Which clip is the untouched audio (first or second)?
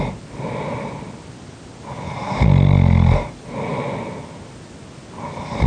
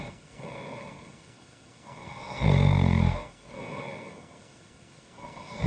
first